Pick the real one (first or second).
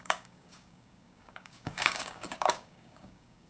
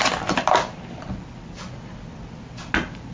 second